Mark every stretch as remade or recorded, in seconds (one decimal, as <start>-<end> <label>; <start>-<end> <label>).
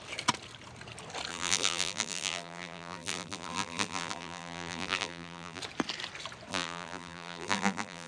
0.0-1.3 recorded; 1.3-5.6 remade; 5.6-6.5 recorded; 6.5-8.1 remade